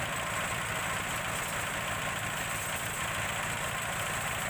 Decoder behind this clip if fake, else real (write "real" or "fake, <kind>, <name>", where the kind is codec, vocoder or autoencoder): real